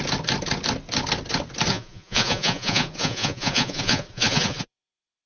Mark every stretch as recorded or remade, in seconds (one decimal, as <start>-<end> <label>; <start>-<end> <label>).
0.0-1.7 recorded; 1.7-5.3 remade